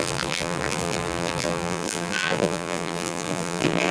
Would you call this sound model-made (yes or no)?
yes